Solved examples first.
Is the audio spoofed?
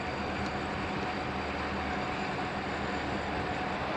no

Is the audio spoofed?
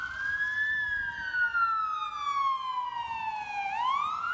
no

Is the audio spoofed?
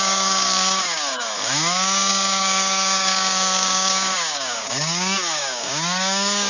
yes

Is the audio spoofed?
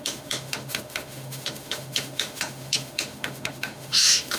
yes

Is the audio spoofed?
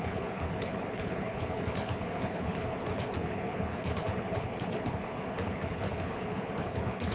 yes